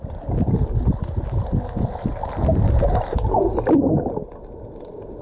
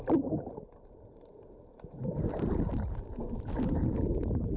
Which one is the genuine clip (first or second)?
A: first